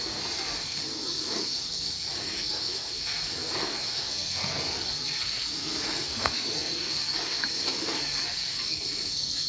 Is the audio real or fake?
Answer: fake